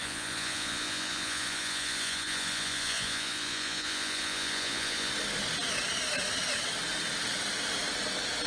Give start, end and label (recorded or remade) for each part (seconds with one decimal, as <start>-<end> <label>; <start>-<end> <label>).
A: 0.0-5.1 remade; 5.1-8.5 recorded